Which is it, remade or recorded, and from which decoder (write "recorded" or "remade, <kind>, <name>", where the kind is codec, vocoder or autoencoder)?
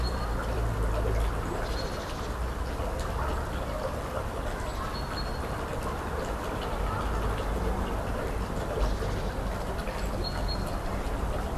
recorded